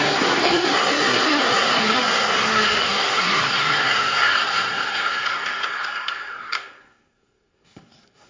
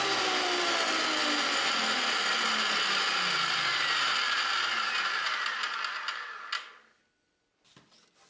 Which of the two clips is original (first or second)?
second